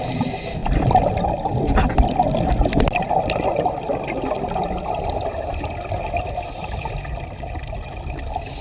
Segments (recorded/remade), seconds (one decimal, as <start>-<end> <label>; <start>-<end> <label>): 0.0-8.6 recorded